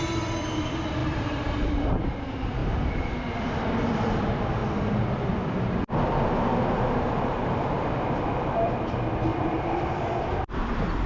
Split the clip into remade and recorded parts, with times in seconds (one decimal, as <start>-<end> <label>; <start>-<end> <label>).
0.0-11.1 remade